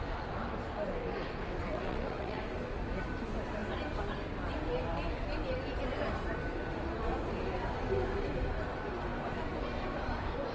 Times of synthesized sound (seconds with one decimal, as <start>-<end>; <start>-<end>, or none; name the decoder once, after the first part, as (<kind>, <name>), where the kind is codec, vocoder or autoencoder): 1.6-2.4 (vocoder, WaveNeXt)